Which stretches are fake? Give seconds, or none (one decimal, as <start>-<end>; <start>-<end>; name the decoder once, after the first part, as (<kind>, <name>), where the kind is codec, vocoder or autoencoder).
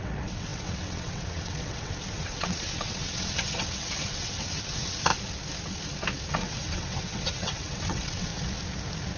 0.0-5.1 (vocoder, WaveNeXt); 6.3-8.3